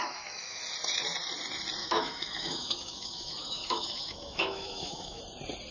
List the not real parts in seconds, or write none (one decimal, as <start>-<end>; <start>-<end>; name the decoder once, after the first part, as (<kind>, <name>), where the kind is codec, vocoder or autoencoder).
0.0-0.6 (autoencoder, DAC-VAE); 1.8-5.2